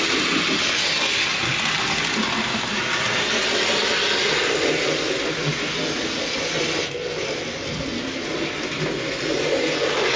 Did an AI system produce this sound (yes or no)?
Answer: no